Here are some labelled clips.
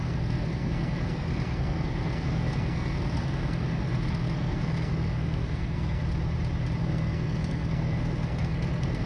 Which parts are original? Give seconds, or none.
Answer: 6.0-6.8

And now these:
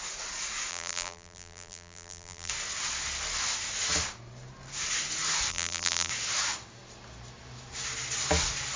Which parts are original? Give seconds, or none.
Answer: 0.0-0.7; 2.5-5.5; 6.1-8.8